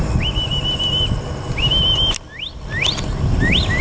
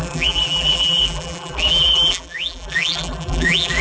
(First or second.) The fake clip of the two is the second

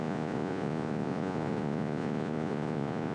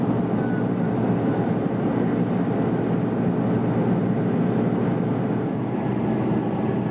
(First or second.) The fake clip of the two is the first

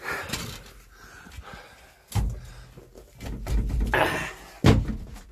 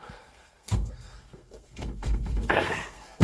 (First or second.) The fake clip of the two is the second